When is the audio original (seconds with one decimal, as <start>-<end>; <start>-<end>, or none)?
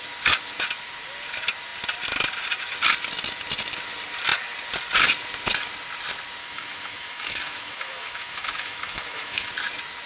0.0-6.4; 9.5-10.1